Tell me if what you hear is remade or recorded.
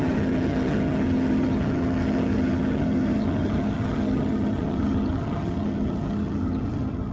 remade